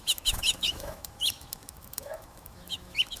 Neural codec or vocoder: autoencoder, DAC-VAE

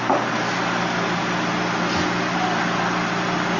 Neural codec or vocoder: none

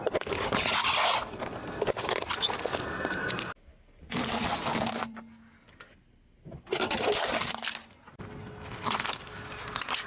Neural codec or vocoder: none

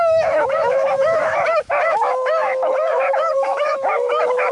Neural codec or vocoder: autoencoder, DAC-VAE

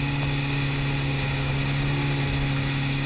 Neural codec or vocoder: none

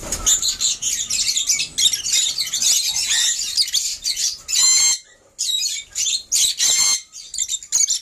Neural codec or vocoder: none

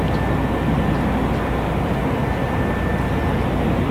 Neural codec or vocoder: none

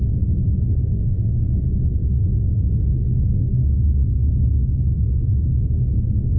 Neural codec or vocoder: autoencoder, DAC-VAE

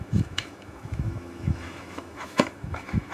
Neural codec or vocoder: autoencoder, DAC-VAE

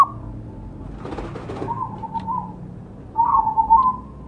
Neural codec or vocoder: none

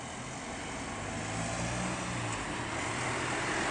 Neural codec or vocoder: none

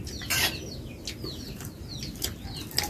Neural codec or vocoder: none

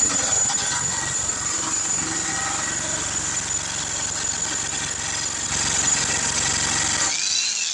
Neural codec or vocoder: none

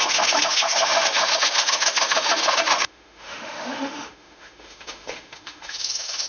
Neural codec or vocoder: autoencoder, DAC-VAE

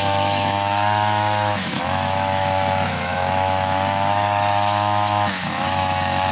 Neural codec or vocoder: autoencoder, DAC-VAE